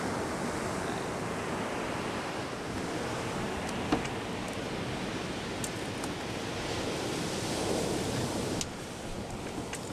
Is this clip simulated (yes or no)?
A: no